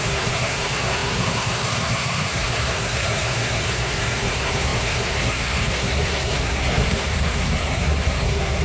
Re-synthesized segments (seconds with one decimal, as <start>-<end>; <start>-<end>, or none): 0.0-8.6